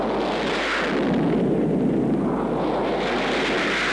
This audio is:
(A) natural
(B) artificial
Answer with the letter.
A